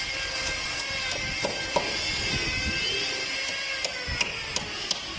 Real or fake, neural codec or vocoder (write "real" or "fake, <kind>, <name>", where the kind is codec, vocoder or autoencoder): real